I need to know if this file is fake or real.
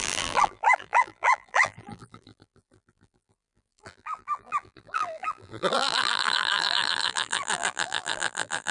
fake